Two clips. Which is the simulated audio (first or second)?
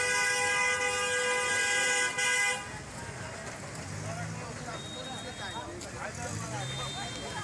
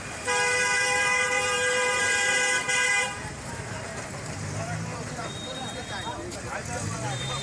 second